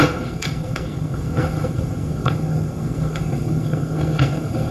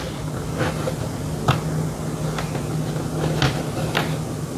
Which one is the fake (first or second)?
first